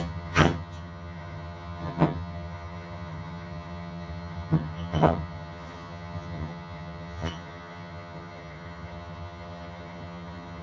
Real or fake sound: fake